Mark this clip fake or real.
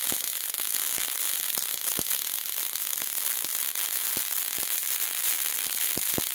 real